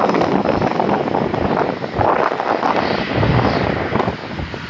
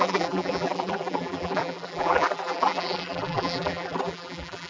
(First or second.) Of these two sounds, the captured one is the first